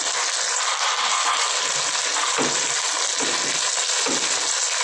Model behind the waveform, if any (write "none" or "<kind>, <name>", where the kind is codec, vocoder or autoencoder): none